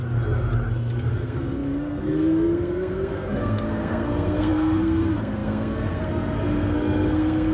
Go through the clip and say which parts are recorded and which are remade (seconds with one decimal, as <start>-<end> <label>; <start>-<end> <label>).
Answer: 0.0-1.1 recorded; 1.1-7.5 remade